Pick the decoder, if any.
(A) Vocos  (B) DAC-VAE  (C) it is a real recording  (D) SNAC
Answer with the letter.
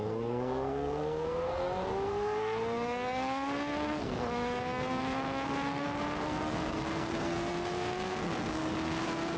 D